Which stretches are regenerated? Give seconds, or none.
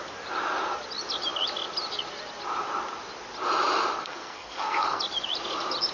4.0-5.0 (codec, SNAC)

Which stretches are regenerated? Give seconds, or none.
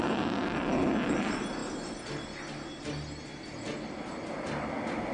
none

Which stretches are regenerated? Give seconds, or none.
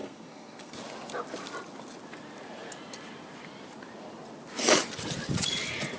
0.0-0.7 (codec, SNAC)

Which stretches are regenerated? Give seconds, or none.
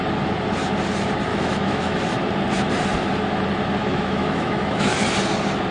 1.3-2.0 (autoencoder, DAC-VAE); 3.8-5.0